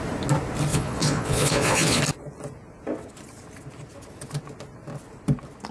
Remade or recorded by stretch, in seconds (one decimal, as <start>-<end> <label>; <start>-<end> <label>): 0.0-0.7 recorded; 0.7-2.0 remade; 2.0-5.7 recorded